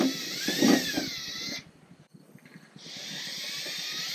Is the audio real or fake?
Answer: fake